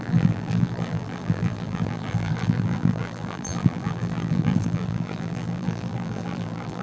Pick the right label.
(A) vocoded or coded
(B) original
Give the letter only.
A